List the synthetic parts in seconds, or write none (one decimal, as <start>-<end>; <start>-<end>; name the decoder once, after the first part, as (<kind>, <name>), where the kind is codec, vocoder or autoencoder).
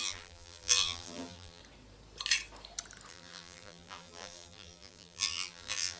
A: 0.0-1.6 (vocoder, BigVGAN v2); 3.1-6.0